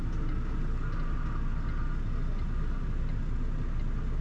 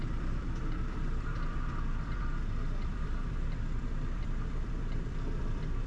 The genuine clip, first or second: first